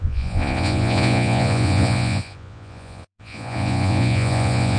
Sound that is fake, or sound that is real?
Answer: fake